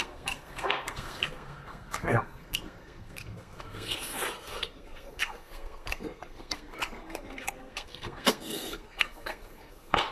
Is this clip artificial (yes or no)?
yes